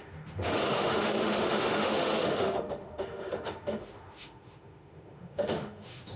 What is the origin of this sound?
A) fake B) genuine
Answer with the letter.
A